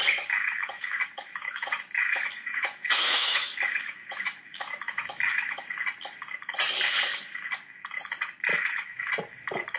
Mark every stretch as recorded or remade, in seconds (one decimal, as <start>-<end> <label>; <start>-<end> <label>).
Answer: 0.0-0.6 recorded; 0.6-5.6 remade; 5.6-8.5 recorded; 8.5-9.1 remade; 9.1-9.8 recorded